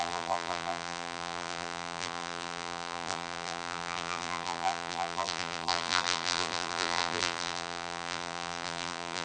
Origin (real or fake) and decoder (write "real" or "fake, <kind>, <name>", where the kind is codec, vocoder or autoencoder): fake, vocoder, BigVGAN v2